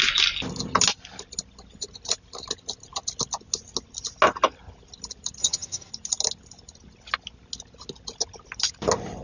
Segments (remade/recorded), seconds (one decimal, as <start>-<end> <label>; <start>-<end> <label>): 0.0-5.4 recorded; 5.4-5.9 remade; 5.9-9.2 recorded